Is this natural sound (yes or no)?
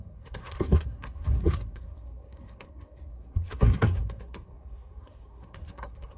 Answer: no